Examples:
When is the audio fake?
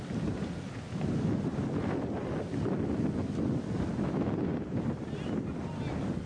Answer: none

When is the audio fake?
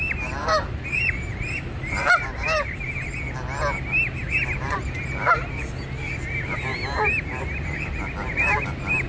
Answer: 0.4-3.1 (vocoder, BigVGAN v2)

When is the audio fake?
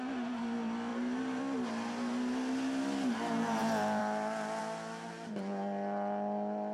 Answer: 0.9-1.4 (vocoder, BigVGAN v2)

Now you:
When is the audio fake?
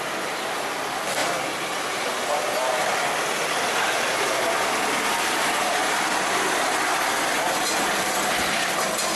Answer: none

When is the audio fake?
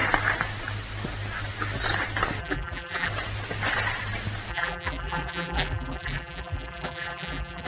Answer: 2.4-3.1 (vocoder, BigVGAN v2); 4.5-7.7